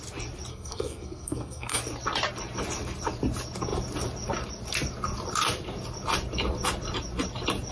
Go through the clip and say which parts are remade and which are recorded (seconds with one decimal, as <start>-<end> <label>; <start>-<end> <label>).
0.0-0.5 recorded; 0.5-1.8 remade; 1.8-7.7 recorded